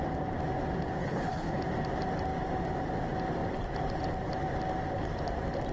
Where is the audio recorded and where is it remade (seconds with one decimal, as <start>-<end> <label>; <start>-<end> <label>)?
0.0-1.0 recorded; 1.0-1.6 remade; 1.6-5.7 recorded